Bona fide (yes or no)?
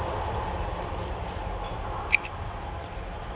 yes